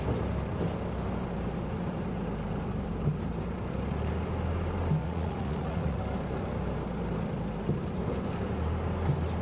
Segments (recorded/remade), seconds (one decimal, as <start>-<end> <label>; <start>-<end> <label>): 0.0-5.0 recorded; 5.0-6.0 remade; 6.0-9.4 recorded